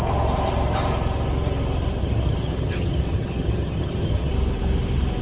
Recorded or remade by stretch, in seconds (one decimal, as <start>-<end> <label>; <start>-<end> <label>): 0.0-2.0 recorded; 2.0-4.3 remade; 4.3-5.2 recorded